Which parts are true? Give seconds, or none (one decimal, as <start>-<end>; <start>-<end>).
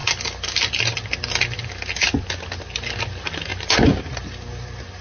0.0-5.0